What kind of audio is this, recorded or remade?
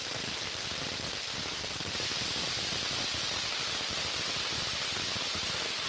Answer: recorded